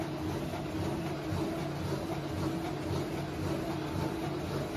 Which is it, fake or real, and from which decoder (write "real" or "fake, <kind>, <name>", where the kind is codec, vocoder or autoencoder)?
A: real